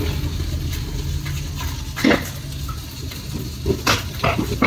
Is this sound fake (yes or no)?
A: no